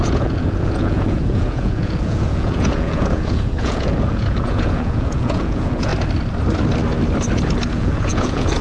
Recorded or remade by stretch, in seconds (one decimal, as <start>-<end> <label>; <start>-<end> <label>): 0.0-5.9 remade; 5.9-7.7 recorded; 7.7-8.6 remade